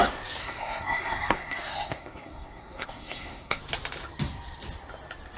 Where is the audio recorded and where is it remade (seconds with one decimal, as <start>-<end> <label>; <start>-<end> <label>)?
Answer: 0.0-0.4 recorded; 0.4-3.6 remade; 3.6-5.4 recorded